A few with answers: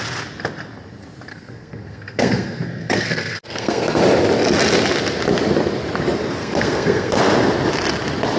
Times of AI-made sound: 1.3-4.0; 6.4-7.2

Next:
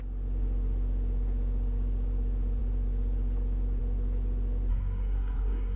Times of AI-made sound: 4.7-5.8

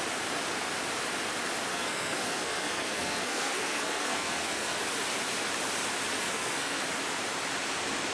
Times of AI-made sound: 1.7-4.8; 6.2-6.8

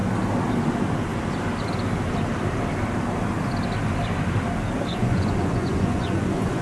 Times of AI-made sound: 4.9-6.6